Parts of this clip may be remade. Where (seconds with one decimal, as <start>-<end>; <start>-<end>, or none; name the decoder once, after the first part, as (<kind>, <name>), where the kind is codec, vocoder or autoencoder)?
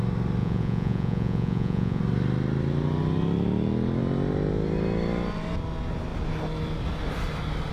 0.4-2.0 (vocoder, Vocos)